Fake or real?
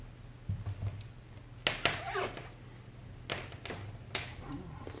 real